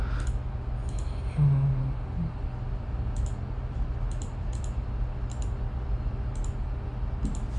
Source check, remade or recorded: recorded